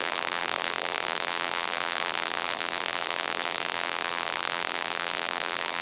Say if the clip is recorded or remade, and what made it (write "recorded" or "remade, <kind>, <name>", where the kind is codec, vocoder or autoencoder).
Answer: remade, vocoder, BigVGAN v2